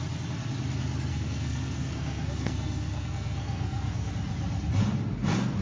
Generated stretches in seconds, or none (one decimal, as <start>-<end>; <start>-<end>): 1.1-4.1